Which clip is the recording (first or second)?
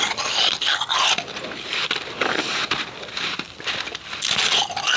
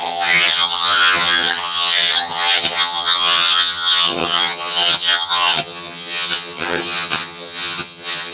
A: first